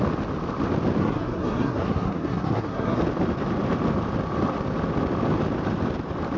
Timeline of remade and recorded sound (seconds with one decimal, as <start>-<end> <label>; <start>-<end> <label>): 0.0-1.0 recorded; 1.0-3.0 remade; 3.0-6.4 recorded

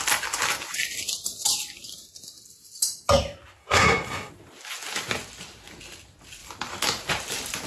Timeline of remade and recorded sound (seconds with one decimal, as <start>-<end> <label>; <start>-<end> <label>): 0.0-3.6 recorded; 3.6-4.3 remade; 4.3-7.7 recorded

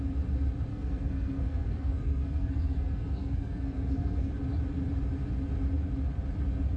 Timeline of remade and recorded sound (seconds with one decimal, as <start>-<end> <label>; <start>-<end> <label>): 0.0-0.7 recorded; 0.7-4.3 remade; 4.3-6.8 recorded

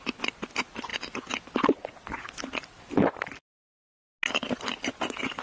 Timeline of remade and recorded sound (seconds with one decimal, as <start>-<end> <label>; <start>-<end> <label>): 0.0-5.4 recorded